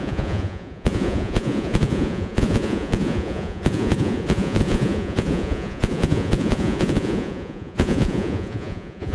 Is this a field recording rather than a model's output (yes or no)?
no